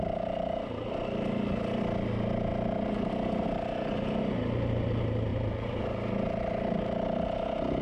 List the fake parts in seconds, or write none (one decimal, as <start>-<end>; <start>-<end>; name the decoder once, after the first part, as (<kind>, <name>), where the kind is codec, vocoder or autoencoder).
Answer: 5.3-5.8 (vocoder, BigVGAN v2)